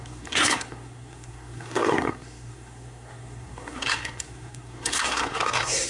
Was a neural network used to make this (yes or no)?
yes